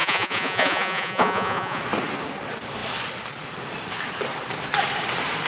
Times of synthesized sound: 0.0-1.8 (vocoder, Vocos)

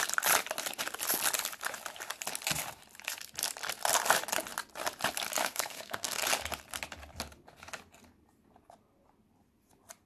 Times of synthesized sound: 5.4-6.2 (codec, SNAC)

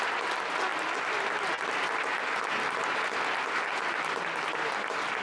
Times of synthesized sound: none

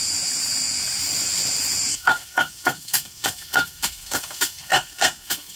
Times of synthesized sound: 1.9-5.6 (codec, SNAC)

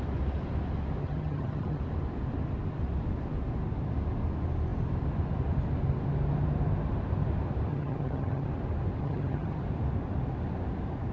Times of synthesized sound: 1.0-1.8 (vocoder, HiFi-GAN); 7.7-8.5; 9.0-9.6

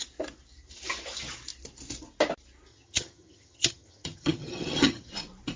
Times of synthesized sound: 2.7-5.1 (vocoder, HiFi-GAN)